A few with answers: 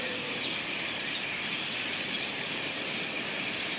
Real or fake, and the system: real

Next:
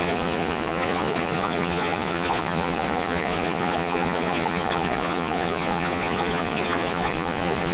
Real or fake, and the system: fake, vocoder, Vocos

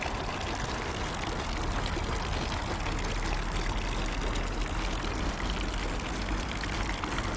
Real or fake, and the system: real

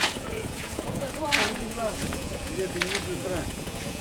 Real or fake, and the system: fake, vocoder, Vocos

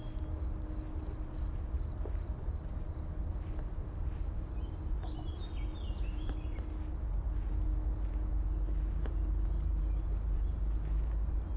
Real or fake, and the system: real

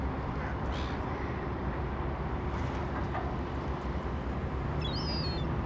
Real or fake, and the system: real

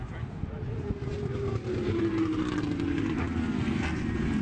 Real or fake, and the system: real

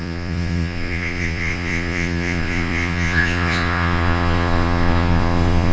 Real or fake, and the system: fake, vocoder, Vocos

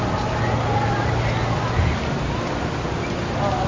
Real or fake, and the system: real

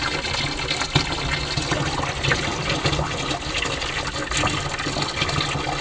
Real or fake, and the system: real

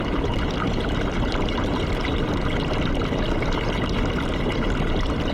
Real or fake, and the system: real